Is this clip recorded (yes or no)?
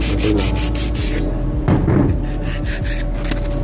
yes